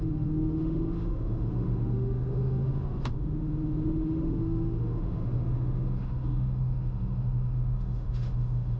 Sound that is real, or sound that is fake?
fake